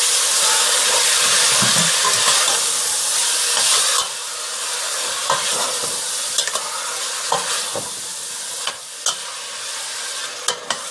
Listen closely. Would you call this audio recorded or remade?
recorded